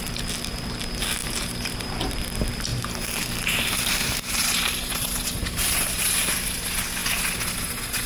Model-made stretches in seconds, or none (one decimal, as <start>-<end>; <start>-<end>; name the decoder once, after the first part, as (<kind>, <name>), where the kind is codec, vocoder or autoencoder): 1.2-1.9 (vocoder, BigVGAN v2); 2.7-6.5

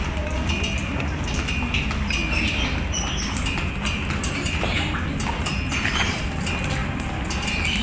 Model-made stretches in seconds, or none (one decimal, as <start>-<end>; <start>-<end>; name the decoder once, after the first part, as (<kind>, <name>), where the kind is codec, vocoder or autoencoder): 5.5-6.2 (vocoder, BigVGAN v2)

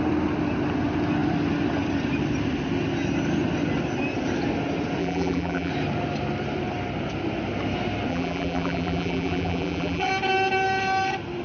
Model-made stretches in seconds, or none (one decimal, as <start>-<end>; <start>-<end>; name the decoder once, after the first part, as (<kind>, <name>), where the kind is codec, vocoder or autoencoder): 5.0-5.7 (vocoder, BigVGAN v2); 8.1-10.1

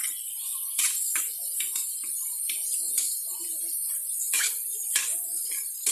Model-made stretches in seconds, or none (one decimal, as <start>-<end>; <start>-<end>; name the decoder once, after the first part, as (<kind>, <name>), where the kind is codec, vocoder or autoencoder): none

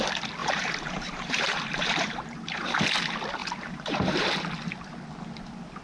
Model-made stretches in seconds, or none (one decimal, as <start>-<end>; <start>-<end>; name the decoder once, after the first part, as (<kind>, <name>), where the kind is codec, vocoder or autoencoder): 0.4-2.7 (vocoder, BigVGAN v2); 3.4-4.3

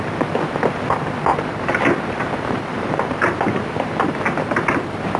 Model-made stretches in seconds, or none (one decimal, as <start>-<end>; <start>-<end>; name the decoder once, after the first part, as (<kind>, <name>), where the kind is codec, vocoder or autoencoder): 1.3-4.4 (vocoder, BigVGAN v2)

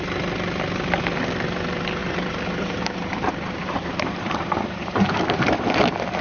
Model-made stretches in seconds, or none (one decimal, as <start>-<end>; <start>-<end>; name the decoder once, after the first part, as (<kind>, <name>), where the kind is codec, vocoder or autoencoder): 2.0-5.7 (vocoder, BigVGAN v2)